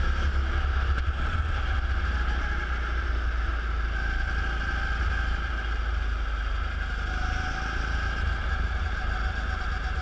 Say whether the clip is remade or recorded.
recorded